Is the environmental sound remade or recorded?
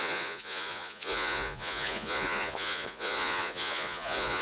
remade